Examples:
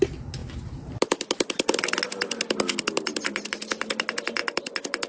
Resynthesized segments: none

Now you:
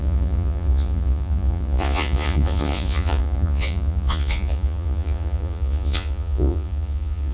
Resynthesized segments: 0.0-7.3 (vocoder, Vocos)

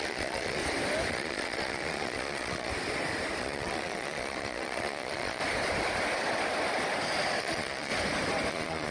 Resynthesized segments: 0.0-0.6 (vocoder, Vocos); 1.1-2.7; 3.4-5.4; 7.4-7.9; 8.5-8.9

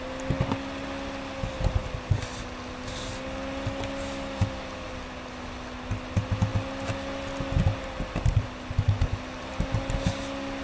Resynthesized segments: none

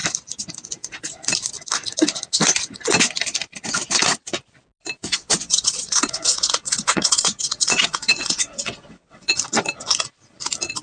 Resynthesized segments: 5.1-9.3 (vocoder, WaveNeXt)